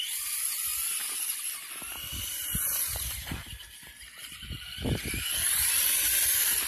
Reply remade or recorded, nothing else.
remade